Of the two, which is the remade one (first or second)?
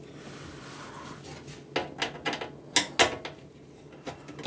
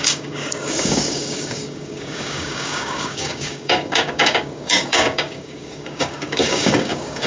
second